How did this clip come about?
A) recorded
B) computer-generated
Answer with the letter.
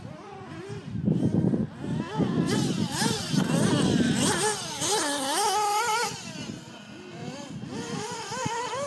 A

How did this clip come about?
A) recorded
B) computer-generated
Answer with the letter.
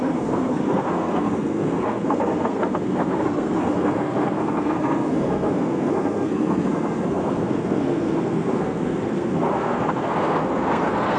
B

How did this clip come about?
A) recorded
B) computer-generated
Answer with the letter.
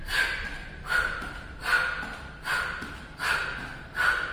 A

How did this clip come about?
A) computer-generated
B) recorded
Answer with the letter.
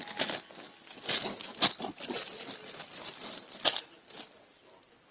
B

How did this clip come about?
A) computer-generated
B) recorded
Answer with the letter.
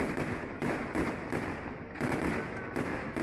B